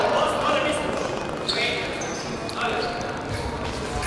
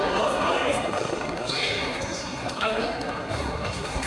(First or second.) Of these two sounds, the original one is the first